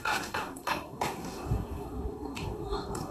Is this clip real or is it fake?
fake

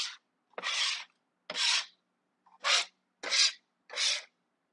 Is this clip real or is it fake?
real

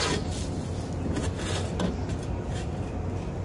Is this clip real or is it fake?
real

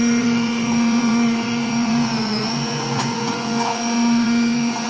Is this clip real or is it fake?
fake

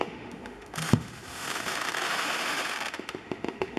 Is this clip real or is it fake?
fake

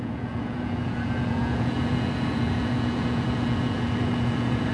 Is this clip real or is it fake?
fake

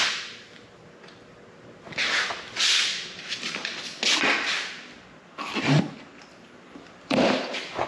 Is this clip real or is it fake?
real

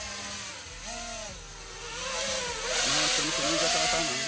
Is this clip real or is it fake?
real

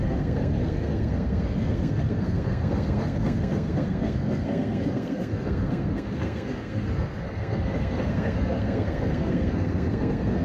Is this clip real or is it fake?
fake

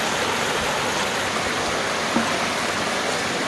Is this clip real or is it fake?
real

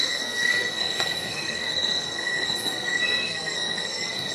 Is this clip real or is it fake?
fake